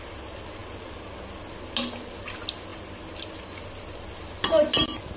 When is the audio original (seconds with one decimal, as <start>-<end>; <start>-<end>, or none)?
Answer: 0.0-5.2